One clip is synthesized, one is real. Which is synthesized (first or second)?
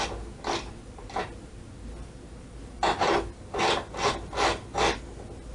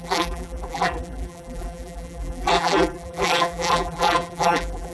second